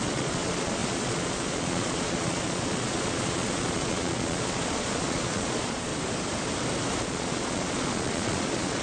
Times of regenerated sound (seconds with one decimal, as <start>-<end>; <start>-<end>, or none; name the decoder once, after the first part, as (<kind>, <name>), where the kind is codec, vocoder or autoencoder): 0.0-5.9 (vocoder, Vocos); 7.0-8.8

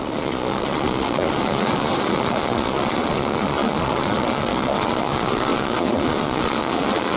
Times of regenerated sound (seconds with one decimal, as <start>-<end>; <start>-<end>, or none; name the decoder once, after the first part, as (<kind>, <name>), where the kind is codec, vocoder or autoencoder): 0.0-7.2 (vocoder, Vocos)